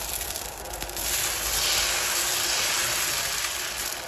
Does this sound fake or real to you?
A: real